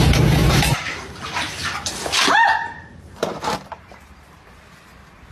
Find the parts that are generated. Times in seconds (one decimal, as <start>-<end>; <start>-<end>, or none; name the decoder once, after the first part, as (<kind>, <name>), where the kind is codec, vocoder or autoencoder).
0.4-1.1 (vocoder, BigVGAN v2); 1.6-4.8